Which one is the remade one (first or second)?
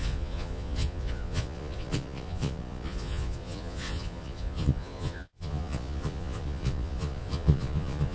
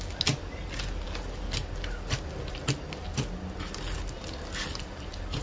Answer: first